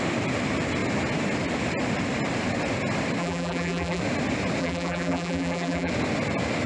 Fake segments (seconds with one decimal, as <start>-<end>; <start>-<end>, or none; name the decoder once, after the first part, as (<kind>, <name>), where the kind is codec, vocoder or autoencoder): 3.2-4.0 (vocoder, BigVGAN v2); 4.6-5.9